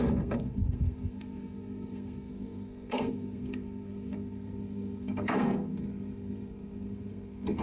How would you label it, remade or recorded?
remade